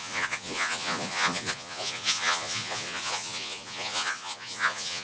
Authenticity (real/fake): fake